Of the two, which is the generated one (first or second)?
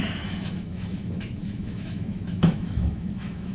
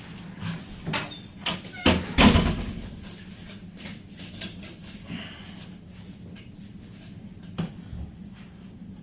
first